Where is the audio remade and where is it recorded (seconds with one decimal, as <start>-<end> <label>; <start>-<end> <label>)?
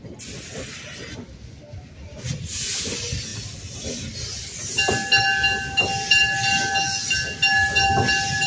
0.0-3.3 recorded; 3.3-4.0 remade; 4.0-8.5 recorded